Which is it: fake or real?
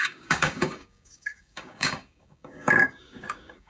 fake